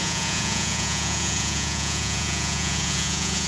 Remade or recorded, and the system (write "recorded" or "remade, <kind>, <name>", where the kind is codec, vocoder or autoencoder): remade, vocoder, Vocos